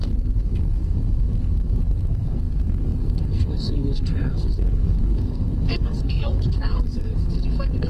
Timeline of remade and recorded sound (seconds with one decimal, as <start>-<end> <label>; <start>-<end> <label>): 0.0-7.9 remade